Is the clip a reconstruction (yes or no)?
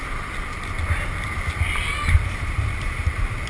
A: no